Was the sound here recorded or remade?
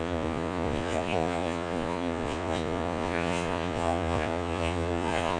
remade